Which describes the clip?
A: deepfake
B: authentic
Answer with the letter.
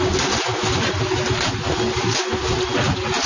B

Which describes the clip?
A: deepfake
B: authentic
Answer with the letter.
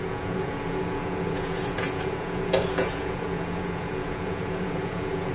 A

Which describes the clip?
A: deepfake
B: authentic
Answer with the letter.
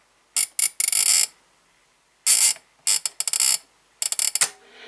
B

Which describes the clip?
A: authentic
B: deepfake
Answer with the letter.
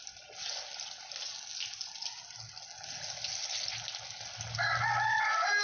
A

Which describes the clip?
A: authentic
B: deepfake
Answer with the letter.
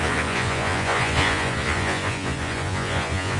B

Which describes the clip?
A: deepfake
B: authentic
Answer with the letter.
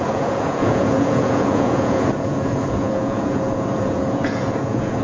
A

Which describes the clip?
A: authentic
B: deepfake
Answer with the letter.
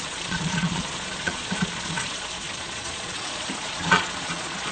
B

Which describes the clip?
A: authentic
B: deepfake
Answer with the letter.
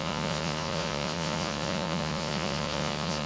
B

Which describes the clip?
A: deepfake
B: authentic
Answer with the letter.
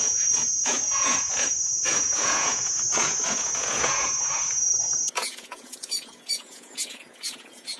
A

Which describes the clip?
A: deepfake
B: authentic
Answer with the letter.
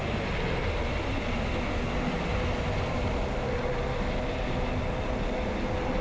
B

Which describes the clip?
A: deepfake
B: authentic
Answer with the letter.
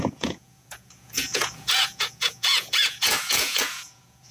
A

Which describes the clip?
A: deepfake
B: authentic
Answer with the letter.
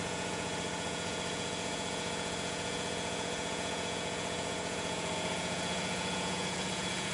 A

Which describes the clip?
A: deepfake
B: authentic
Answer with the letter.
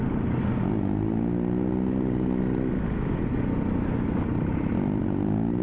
B